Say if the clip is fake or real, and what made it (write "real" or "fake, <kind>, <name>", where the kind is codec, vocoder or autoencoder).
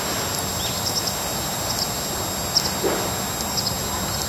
real